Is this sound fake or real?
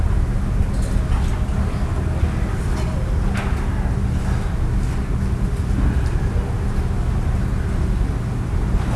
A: real